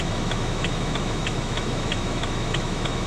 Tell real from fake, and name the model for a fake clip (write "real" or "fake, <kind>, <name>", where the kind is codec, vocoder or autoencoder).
fake, autoencoder, DAC-VAE